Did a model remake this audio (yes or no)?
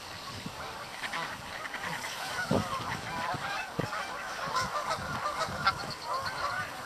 yes